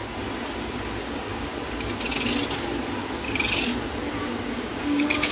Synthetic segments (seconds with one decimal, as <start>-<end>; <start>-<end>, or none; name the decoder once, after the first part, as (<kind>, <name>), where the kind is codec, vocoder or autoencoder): 1.0-1.5 (codec, DAC); 4.2-5.3